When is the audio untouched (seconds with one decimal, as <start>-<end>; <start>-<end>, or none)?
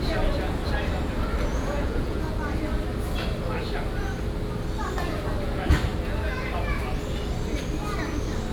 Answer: 0.0-1.5; 2.2-8.5